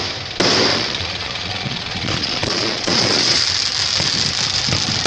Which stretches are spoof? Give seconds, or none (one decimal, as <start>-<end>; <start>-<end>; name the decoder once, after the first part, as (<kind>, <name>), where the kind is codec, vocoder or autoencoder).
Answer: 0.7-3.4 (vocoder, Vocos)